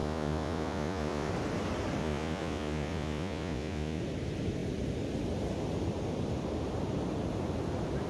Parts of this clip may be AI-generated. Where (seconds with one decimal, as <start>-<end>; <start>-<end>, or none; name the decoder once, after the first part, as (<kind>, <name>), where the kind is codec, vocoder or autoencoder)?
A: 0.0-1.3 (vocoder, Vocos); 2.0-4.0